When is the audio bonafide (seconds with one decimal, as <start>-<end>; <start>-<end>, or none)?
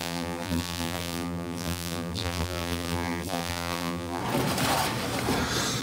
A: 4.2-5.8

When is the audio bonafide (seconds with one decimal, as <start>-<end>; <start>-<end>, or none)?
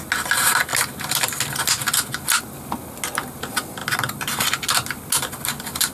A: 0.0-5.9